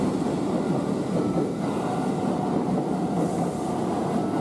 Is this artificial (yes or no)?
no